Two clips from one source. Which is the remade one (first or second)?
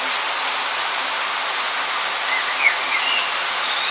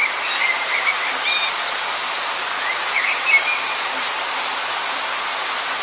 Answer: second